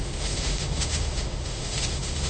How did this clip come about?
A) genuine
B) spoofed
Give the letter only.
B